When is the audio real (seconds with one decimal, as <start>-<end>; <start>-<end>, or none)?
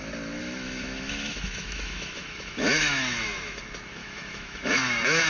0.0-0.4; 3.6-4.0